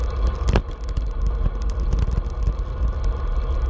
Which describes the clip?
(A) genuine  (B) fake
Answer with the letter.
A